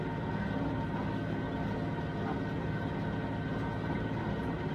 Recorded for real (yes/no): yes